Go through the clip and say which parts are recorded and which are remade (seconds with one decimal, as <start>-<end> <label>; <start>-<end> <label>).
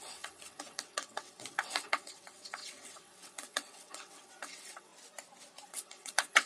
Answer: 0.0-4.9 remade; 4.9-5.7 recorded; 5.7-6.5 remade